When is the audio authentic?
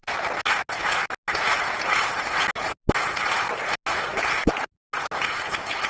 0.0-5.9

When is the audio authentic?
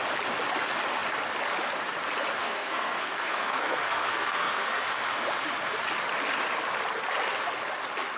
0.0-2.4; 4.8-8.2